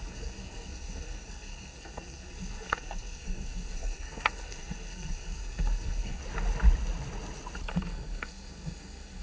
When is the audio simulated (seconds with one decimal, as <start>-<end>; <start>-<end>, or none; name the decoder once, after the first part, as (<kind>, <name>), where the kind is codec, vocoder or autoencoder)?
0.0-6.2 (codec, SNAC); 7.7-9.2

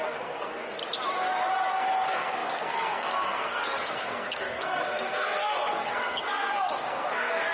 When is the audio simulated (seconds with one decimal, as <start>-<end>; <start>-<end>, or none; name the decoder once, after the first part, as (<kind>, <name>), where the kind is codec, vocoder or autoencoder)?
0.0-0.8 (codec, SNAC); 1.7-7.5

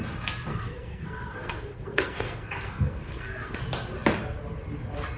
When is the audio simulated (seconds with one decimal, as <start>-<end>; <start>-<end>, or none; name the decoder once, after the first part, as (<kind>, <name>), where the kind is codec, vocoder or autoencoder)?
0.5-3.6 (codec, SNAC)

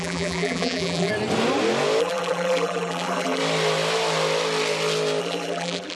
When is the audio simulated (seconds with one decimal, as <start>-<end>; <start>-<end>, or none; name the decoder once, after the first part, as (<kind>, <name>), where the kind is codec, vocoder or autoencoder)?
0.0-1.1 (vocoder, BigVGAN v2); 2.0-3.4; 5.2-5.9

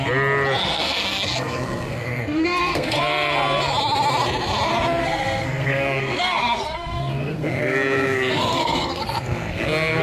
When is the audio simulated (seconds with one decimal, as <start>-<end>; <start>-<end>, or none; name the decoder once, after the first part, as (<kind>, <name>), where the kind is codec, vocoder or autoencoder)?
0.6-3.0 (codec, SNAC); 5.0-10.0

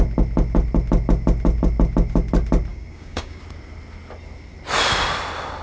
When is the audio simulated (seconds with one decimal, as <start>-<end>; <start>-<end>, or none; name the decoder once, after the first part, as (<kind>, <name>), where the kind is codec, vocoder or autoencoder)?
2.7-3.4 (codec, DAC)

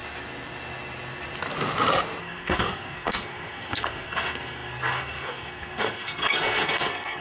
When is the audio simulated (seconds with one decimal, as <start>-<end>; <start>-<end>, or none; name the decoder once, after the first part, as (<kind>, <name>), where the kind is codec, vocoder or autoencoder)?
2.2-7.2 (codec, SNAC)